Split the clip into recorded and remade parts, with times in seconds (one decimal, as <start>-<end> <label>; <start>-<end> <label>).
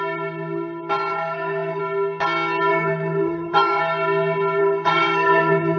0.0-1.1 recorded; 1.1-1.8 remade; 1.8-2.7 recorded; 2.7-3.8 remade; 3.8-4.6 recorded; 4.6-5.8 remade